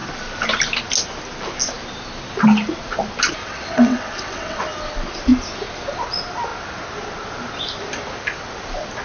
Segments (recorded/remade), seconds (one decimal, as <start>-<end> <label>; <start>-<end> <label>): 0.0-3.4 recorded; 3.4-4.6 remade; 4.6-9.0 recorded

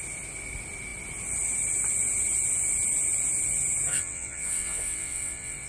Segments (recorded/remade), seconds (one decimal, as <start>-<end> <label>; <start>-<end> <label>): 0.0-3.9 recorded; 3.9-5.7 remade

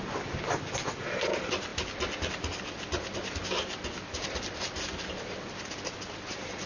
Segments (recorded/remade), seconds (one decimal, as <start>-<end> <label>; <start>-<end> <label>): 0.0-6.7 recorded

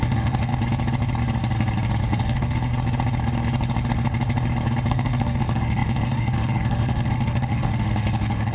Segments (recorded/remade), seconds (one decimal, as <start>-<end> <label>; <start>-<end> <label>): 0.0-0.5 remade; 0.5-2.0 recorded; 2.0-2.7 remade; 2.7-4.9 recorded; 4.9-8.5 remade

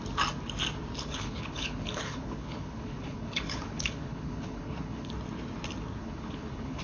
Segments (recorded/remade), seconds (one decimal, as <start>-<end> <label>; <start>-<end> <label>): 0.0-1.0 recorded; 1.0-5.1 remade; 5.1-6.0 recorded; 6.0-6.8 remade

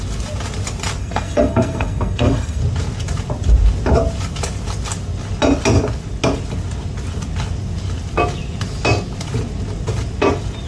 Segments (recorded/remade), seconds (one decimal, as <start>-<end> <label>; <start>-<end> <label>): 0.0-1.0 recorded; 1.0-2.6 remade; 2.6-10.7 recorded